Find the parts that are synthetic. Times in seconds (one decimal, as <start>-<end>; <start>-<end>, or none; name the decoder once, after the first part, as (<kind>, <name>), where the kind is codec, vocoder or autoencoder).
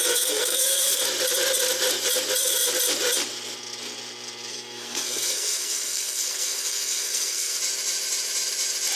0.0-1.0 (codec, SNAC); 4.5-7.6